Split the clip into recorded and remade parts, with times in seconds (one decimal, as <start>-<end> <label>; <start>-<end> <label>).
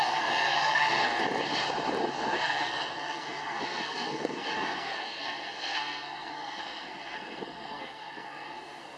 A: 0.0-1.2 remade; 1.2-2.1 recorded; 2.1-9.0 remade